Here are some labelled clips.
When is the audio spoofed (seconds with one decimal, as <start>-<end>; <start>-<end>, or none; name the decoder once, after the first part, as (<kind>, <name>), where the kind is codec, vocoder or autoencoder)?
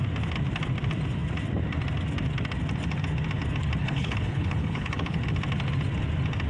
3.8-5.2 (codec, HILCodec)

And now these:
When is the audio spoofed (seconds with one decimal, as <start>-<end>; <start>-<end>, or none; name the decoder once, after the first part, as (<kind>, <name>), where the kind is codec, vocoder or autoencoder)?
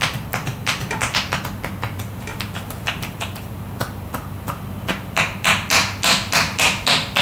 2.3-4.1 (vocoder, BigVGAN v2)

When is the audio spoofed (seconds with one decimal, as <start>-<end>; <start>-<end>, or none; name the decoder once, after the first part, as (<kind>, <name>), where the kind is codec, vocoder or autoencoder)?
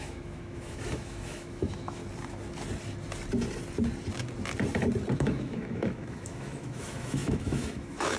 0.0-2.0 (autoencoder, DAC-VAE); 5.1-8.2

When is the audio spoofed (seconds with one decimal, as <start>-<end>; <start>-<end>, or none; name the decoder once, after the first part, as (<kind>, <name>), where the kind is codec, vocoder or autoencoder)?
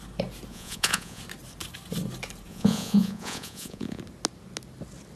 0.5-1.2 (vocoder, Vocos); 2.5-4.0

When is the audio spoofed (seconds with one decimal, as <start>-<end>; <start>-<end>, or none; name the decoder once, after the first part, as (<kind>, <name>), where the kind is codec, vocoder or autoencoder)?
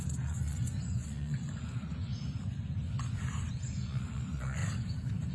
0.0-2.1 (vocoder, Vocos); 3.5-4.6